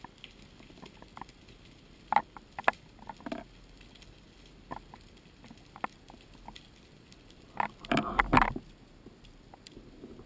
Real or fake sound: real